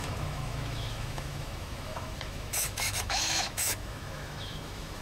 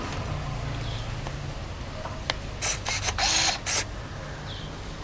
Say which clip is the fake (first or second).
first